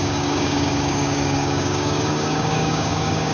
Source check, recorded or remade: remade